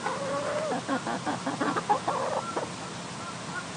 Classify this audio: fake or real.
real